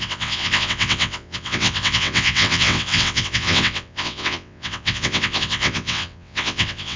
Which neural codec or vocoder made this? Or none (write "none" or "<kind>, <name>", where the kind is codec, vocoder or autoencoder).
vocoder, WaveNeXt